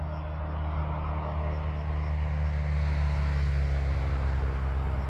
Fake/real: real